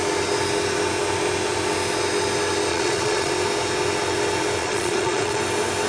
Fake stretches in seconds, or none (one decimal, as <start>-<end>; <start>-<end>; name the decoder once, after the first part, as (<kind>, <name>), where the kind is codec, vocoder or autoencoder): 2.7-3.3 (vocoder, Vocos); 4.6-5.4